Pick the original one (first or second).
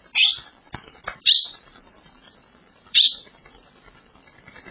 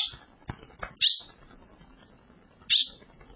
second